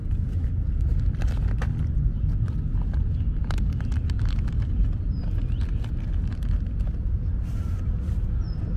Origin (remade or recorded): recorded